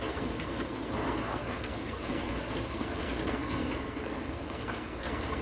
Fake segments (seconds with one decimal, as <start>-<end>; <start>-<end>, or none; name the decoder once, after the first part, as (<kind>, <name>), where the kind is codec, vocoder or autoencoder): 0.0-5.4 (codec, SNAC)